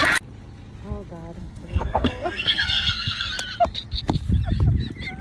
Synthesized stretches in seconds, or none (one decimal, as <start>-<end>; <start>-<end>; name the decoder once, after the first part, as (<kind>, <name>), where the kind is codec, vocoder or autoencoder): 1.4-3.3 (codec, SNAC)